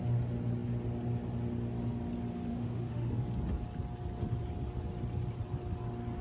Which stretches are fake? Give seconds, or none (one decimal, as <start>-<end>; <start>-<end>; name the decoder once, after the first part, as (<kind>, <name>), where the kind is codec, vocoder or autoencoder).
2.5-3.1 (autoencoder, DAC-VAE)